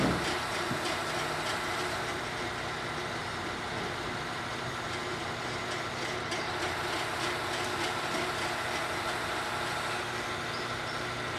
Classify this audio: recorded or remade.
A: recorded